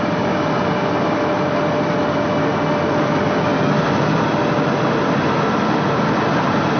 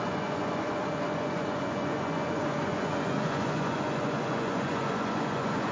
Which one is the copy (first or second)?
second